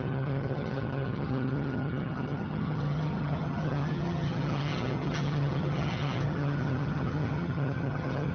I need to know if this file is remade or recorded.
remade